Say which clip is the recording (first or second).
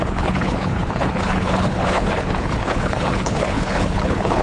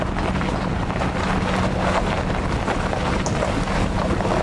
second